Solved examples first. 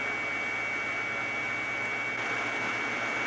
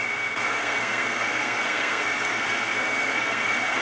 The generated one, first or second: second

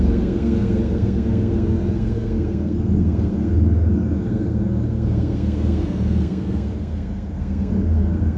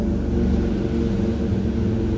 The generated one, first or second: first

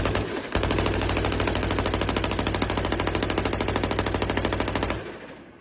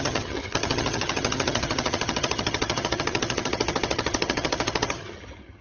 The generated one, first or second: second